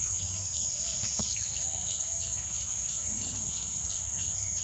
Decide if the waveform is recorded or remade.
remade